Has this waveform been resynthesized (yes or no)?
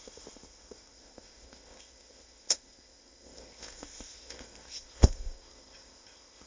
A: yes